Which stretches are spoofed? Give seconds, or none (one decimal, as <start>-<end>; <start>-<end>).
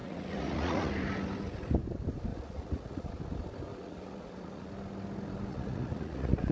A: 0.0-0.9; 2.3-3.1; 3.7-4.7; 5.5-6.5